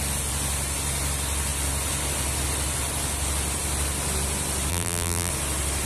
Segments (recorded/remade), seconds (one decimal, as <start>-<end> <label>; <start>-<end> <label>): 0.0-4.7 recorded; 4.7-5.3 remade; 5.3-5.9 recorded